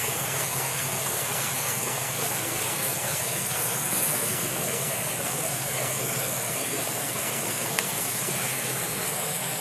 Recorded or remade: remade